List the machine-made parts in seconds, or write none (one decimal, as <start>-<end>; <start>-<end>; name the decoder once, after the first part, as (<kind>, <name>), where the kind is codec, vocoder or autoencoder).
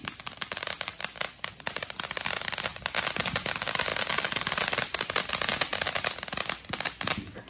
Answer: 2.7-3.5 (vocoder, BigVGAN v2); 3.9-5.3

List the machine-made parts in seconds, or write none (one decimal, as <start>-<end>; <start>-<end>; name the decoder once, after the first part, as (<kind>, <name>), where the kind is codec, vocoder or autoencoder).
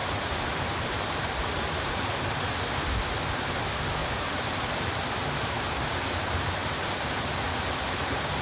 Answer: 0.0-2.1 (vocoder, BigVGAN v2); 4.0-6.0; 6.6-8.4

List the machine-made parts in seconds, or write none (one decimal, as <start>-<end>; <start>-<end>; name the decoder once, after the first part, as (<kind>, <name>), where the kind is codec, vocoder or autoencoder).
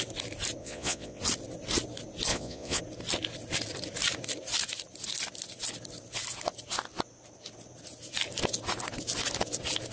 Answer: 0.6-1.2 (vocoder, Vocos); 2.3-2.8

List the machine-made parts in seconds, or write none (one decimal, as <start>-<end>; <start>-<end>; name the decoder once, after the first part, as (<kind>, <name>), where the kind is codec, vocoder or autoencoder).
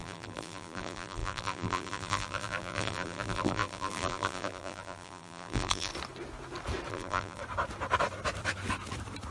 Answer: 0.0-5.9 (vocoder, BigVGAN v2); 6.9-7.4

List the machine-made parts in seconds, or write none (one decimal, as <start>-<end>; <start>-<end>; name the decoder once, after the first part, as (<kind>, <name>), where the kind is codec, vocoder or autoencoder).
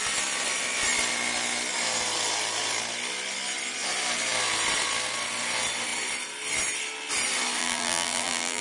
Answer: 7.6-8.6 (vocoder, BigVGAN v2)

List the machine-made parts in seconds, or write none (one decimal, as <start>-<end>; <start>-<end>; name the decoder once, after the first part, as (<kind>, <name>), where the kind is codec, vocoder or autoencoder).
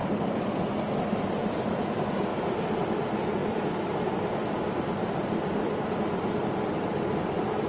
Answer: 0.7-2.3 (vocoder, BigVGAN v2); 2.8-7.7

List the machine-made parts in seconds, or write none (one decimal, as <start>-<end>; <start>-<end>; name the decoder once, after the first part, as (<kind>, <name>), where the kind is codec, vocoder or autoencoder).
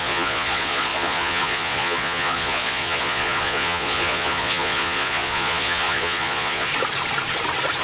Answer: 0.0-6.7 (vocoder, Vocos)